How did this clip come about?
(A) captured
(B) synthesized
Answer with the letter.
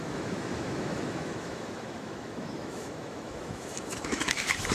B